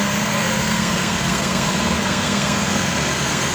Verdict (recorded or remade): remade